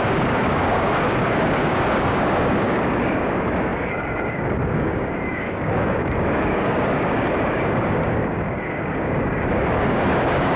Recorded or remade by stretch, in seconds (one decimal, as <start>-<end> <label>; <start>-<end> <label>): 0.0-10.6 remade